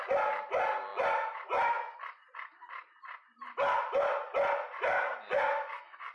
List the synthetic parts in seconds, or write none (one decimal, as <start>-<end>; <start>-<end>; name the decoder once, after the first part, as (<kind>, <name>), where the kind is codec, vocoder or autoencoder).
5.1-6.1 (vocoder, Vocos)